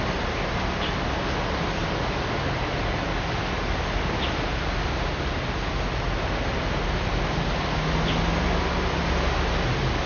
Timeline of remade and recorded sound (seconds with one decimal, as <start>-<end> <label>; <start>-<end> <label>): 0.0-10.1 recorded

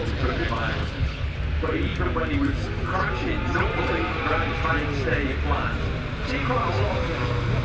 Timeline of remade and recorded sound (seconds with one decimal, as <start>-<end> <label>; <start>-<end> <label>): 0.0-0.8 recorded; 0.8-1.4 remade; 1.4-7.6 recorded

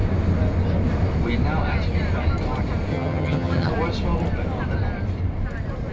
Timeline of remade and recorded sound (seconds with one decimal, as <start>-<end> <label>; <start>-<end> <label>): 0.0-2.9 recorded; 2.9-3.7 remade; 3.7-5.9 recorded

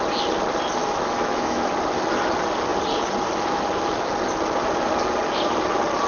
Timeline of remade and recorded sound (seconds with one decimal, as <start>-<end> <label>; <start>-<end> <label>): 0.0-0.8 recorded; 0.8-1.7 remade; 1.7-6.1 recorded

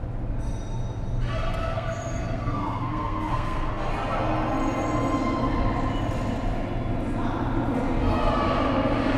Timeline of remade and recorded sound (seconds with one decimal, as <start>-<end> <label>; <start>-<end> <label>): 0.0-1.6 recorded; 1.6-3.9 remade; 3.9-9.2 recorded

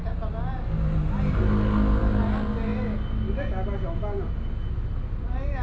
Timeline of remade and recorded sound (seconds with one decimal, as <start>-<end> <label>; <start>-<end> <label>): 0.0-5.6 recorded